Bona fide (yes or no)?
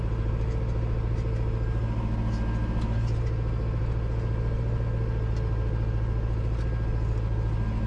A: yes